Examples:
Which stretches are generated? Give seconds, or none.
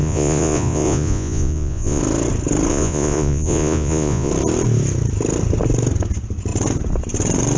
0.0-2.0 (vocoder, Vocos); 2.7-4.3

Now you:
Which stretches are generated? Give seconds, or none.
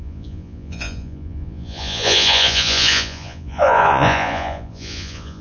0.0-5.4 (vocoder, Vocos)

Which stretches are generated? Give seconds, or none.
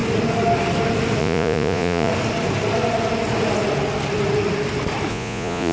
1.2-2.1 (vocoder, Vocos); 5.1-5.7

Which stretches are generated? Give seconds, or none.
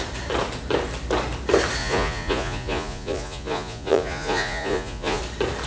1.8-5.2 (vocoder, Vocos)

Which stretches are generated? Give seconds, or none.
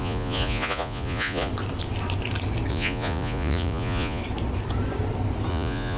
0.0-1.5 (vocoder, Vocos); 2.7-4.2; 5.5-6.0